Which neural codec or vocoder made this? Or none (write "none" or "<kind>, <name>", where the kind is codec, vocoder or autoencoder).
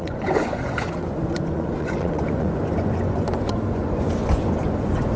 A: vocoder, Vocos